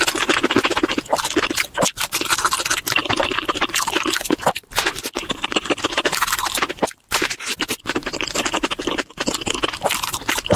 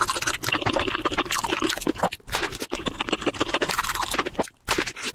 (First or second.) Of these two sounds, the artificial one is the first